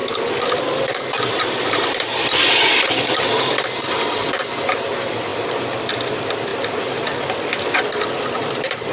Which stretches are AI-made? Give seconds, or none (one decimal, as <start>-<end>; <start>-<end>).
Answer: none